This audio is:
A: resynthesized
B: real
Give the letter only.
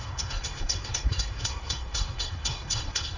A